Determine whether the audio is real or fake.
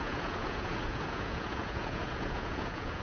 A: fake